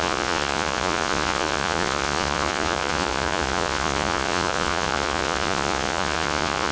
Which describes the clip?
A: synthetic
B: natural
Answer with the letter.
A